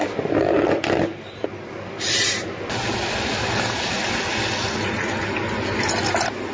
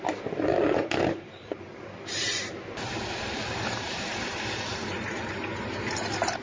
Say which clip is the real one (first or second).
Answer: first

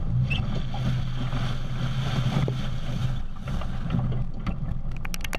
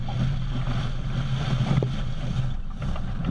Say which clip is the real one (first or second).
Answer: first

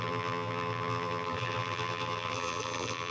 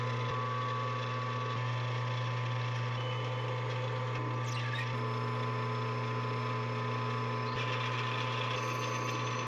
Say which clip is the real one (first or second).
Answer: second